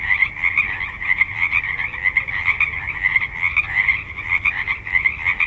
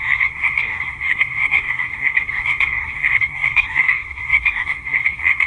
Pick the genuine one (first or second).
first